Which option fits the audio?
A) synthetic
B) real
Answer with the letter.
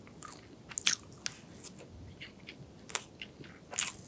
B